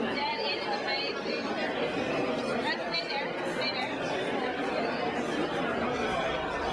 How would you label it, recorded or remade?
remade